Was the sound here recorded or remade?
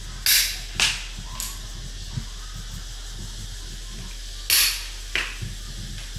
recorded